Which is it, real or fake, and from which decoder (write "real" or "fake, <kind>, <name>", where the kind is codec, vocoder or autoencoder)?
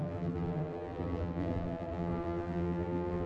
fake, vocoder, BigVGAN v2